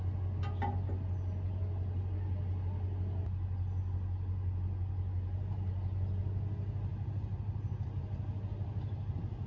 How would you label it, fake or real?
real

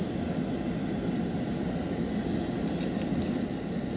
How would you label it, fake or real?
real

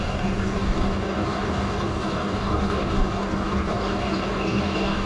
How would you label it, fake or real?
fake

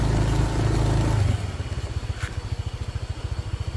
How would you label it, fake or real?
real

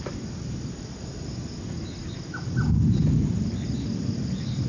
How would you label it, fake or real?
real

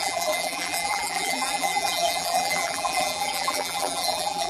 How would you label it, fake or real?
fake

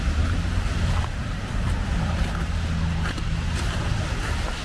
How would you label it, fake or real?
real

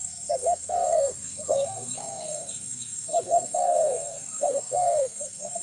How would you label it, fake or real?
fake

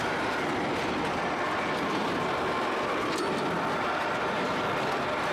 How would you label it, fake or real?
real